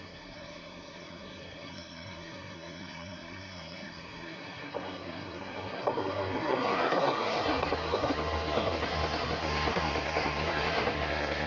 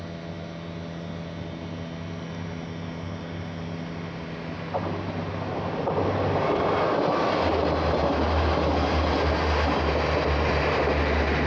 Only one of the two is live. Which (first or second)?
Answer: second